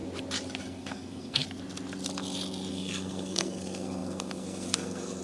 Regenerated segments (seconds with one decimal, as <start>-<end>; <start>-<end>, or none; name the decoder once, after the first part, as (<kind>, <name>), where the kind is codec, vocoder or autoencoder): 0.6-1.4 (codec, SNAC); 2.7-5.2